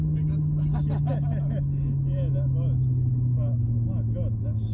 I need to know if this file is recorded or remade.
recorded